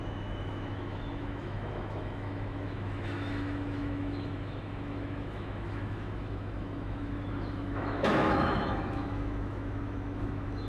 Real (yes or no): no